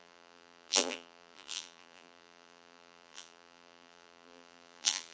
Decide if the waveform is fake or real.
fake